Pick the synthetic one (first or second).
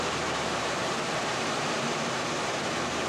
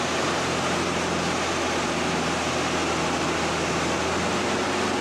first